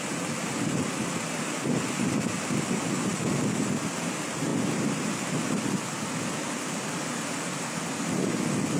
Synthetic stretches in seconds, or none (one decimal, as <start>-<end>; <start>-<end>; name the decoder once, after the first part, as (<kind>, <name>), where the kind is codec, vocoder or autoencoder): none